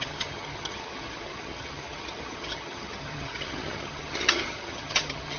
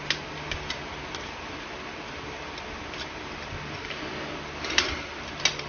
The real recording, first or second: second